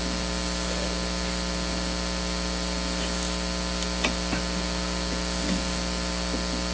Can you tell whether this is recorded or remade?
recorded